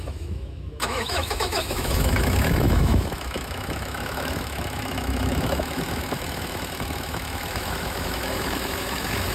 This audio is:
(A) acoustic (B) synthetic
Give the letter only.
B